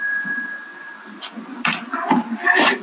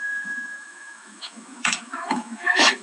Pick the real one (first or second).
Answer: first